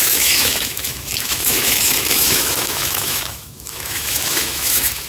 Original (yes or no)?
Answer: no